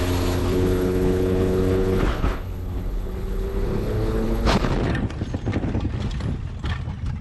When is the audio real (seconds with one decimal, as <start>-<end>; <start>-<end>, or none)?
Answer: 0.0-0.4; 4.7-7.2